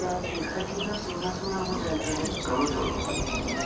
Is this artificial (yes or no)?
no